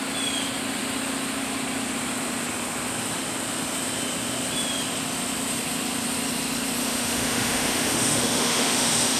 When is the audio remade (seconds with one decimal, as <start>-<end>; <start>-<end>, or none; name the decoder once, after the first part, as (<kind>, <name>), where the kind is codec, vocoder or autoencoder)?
6.8-9.2 (autoencoder, DAC-VAE)

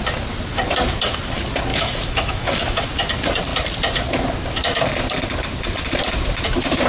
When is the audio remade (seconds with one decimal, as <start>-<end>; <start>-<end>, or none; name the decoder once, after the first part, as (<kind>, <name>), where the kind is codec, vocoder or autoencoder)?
1.7-2.8 (autoencoder, DAC-VAE)

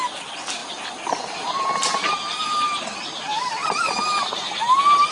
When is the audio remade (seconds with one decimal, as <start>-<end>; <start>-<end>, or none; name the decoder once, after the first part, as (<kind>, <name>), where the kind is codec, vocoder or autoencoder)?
none

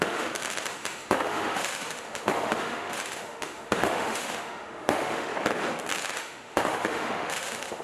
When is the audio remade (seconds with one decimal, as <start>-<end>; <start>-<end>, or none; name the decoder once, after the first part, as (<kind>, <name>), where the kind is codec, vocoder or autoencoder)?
0.0-5.3 (autoencoder, DAC-VAE); 6.0-7.8

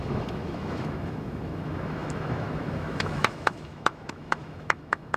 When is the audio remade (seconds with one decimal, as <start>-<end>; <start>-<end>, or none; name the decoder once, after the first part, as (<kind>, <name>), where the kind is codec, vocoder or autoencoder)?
0.0-5.2 (autoencoder, DAC-VAE)